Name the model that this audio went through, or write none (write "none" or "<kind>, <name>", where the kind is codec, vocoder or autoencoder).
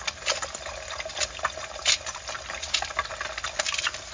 none